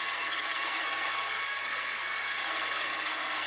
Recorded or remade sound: remade